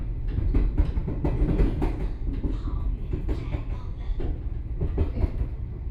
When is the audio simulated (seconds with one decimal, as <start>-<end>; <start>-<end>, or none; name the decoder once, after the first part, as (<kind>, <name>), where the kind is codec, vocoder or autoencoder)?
none